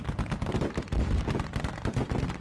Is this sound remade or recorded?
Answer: recorded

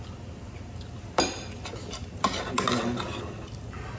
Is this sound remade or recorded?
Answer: recorded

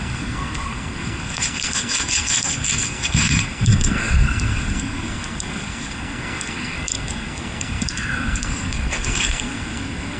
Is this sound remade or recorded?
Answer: remade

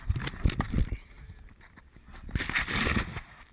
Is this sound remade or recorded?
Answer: recorded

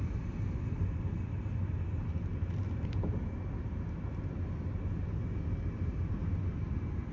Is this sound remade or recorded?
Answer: recorded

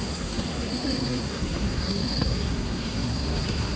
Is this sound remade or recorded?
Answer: remade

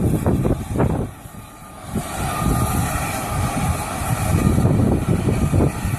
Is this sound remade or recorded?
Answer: recorded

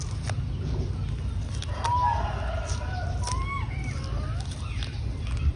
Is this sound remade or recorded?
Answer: recorded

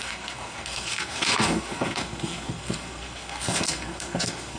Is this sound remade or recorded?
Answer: remade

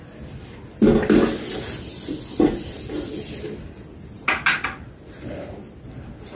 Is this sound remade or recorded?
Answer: recorded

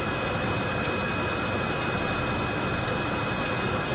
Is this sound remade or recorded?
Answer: recorded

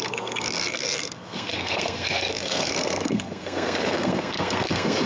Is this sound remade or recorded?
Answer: remade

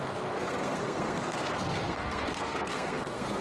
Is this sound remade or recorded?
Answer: remade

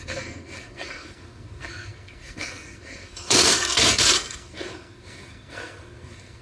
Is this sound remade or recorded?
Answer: remade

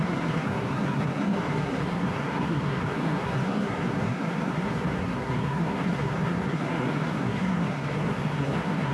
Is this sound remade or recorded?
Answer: remade